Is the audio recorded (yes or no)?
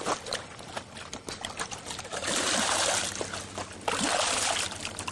yes